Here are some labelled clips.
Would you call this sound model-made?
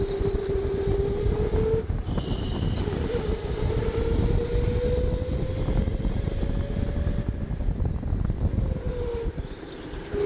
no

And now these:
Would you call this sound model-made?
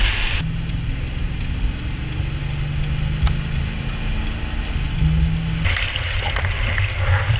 no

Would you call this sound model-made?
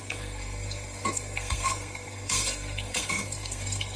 yes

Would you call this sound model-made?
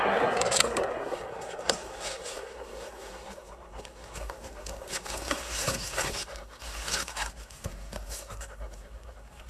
yes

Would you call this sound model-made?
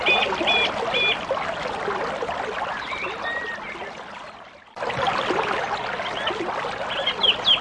no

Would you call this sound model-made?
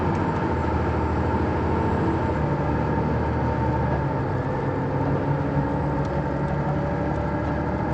no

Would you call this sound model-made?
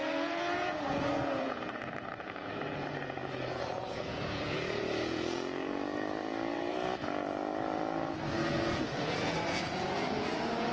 yes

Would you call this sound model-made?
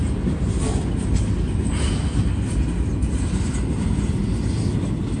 no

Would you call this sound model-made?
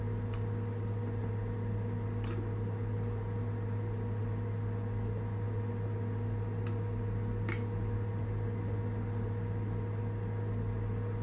no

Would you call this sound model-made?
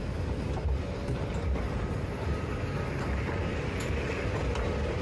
no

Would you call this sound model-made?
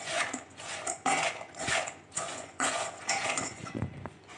yes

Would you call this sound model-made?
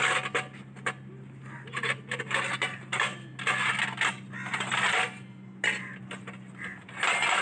no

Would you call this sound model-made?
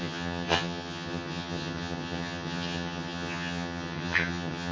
yes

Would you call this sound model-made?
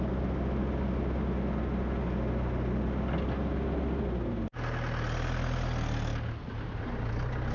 no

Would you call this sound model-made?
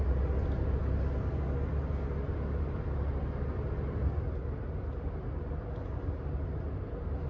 no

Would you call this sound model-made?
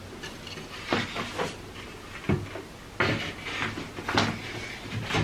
no